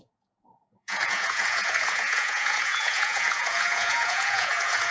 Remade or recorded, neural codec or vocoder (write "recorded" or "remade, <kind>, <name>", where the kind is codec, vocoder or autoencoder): remade, vocoder, Vocos